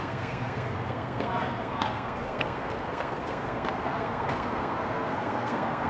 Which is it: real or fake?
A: fake